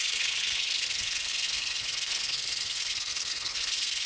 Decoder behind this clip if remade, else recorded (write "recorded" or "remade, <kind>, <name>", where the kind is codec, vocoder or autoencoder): remade, codec, SNAC